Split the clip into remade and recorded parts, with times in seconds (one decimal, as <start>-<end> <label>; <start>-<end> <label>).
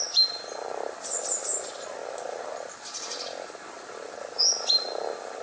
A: 0.0-5.4 recorded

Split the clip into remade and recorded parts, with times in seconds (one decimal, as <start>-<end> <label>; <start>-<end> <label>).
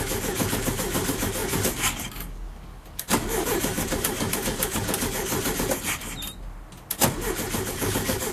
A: 0.0-5.3 remade; 5.3-7.7 recorded; 7.7-8.3 remade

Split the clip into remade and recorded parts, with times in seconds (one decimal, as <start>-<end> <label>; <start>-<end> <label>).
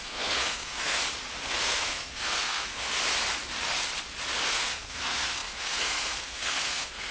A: 0.0-1.0 remade; 1.0-1.6 recorded; 1.6-2.9 remade; 2.9-4.5 recorded; 4.5-7.1 remade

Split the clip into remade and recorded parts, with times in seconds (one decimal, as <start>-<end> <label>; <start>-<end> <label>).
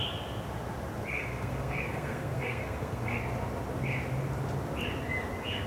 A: 0.0-1.1 recorded; 1.1-3.2 remade; 3.2-5.7 recorded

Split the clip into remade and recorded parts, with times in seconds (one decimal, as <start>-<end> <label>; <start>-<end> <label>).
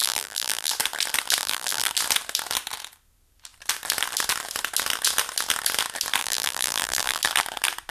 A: 0.0-0.7 remade; 0.7-1.4 recorded; 1.4-1.9 remade; 1.9-6.2 recorded; 6.2-7.2 remade; 7.2-7.9 recorded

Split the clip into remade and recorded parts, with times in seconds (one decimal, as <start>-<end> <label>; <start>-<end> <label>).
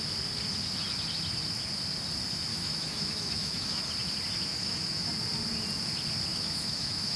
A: 0.0-2.5 recorded; 2.5-3.8 remade; 3.8-4.5 recorded; 4.5-5.1 remade; 5.1-6.3 recorded; 6.3-7.2 remade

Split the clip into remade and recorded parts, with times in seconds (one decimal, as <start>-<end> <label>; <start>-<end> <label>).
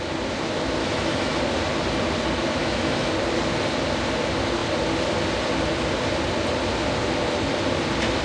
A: 0.0-0.8 recorded; 0.8-1.4 remade; 1.4-2.6 recorded; 2.6-3.1 remade; 3.1-8.2 recorded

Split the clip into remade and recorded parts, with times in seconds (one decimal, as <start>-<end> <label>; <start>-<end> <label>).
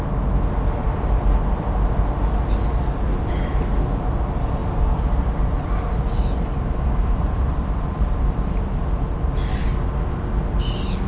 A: 0.0-0.8 recorded; 0.8-1.6 remade; 1.6-4.6 recorded; 4.6-8.4 remade; 8.4-9.5 recorded; 9.5-10.6 remade; 10.6-11.1 recorded